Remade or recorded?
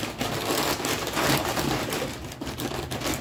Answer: recorded